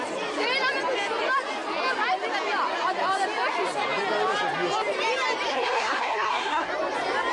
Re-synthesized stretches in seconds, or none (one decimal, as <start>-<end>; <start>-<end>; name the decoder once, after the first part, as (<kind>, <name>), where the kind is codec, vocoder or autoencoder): 5.5-6.7 (codec, SNAC)